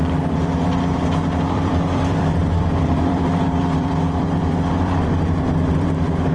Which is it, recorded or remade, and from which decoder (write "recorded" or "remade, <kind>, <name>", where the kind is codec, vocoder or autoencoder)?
remade, vocoder, BigVGAN v2